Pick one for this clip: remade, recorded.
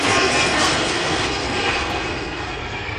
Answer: remade